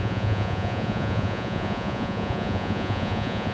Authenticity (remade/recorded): remade